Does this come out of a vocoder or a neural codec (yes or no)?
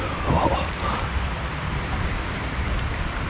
yes